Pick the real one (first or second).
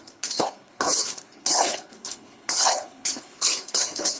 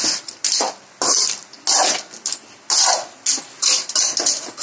second